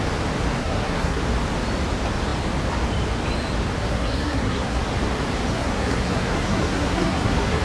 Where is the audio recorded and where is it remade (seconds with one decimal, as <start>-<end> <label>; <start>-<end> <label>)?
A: 0.0-0.6 recorded; 0.6-1.2 remade; 1.2-3.8 recorded; 3.8-4.8 remade; 4.8-5.5 recorded; 5.5-7.6 remade